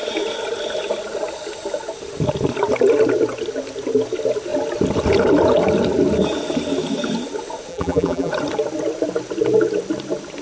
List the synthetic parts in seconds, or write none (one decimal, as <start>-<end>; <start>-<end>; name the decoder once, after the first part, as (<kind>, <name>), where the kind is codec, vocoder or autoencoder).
7.7-8.3 (vocoder, BigVGAN v2)